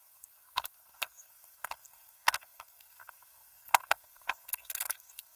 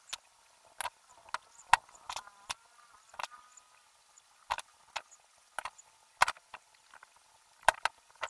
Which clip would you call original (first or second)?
second